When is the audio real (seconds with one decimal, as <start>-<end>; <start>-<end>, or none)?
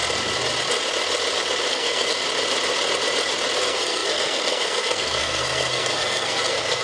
0.0-1.7; 2.2-3.6